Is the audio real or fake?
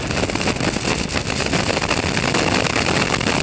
real